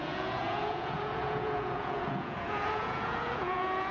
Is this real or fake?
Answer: fake